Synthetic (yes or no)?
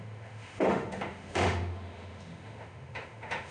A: yes